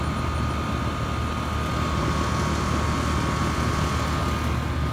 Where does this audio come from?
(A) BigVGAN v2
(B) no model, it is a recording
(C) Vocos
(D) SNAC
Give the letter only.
B